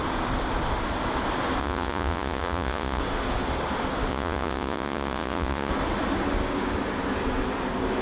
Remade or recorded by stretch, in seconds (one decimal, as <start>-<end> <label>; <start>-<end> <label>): 0.0-1.6 recorded; 1.6-3.0 remade; 3.0-4.1 recorded; 4.1-5.7 remade; 5.7-8.0 recorded